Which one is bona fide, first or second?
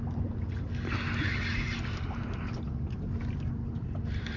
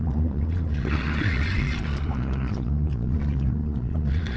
first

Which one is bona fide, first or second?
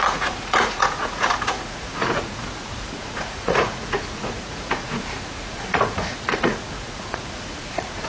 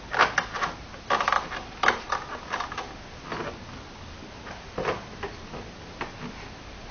second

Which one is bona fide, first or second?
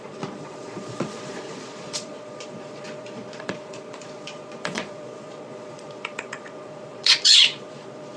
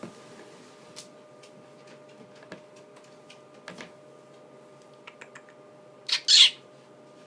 second